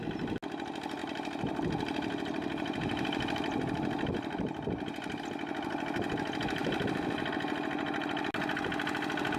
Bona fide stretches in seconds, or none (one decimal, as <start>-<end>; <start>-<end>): 0.0-1.0; 5.2-9.4